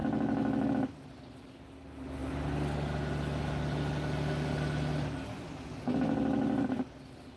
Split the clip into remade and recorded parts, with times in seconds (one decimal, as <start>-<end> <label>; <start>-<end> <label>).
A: 0.0-7.4 recorded